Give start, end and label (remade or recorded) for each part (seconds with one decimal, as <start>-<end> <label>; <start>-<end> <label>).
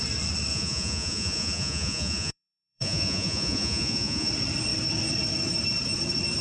0.0-0.5 recorded; 0.5-4.3 remade; 4.3-6.4 recorded